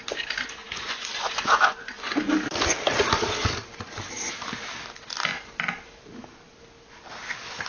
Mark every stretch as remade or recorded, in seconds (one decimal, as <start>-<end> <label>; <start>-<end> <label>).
0.0-0.6 recorded; 0.6-2.3 remade; 2.3-7.7 recorded